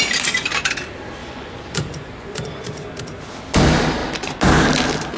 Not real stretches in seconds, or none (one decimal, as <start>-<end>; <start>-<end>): 1.2-2.9